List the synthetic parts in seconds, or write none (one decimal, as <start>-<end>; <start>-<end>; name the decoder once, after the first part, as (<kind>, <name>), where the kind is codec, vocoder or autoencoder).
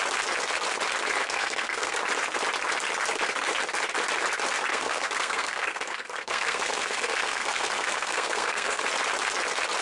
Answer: 1.2-2.0 (codec, SNAC); 4.7-8.8